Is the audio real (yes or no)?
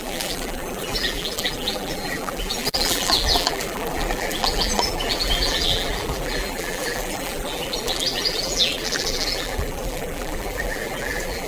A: no